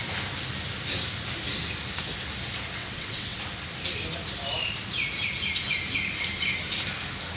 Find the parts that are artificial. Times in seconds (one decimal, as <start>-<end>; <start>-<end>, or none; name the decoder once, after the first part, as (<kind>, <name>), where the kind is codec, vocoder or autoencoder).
2.8-3.4 (vocoder, WaveNeXt)